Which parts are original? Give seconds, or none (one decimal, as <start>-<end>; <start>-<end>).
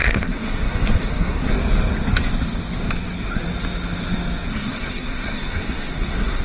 1.5-4.5